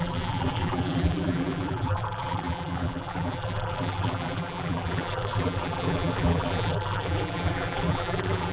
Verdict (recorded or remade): remade